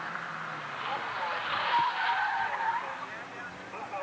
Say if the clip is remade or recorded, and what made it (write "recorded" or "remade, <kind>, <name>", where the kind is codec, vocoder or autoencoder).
recorded